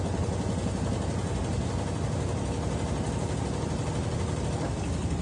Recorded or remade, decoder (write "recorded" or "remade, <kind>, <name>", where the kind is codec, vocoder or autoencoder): recorded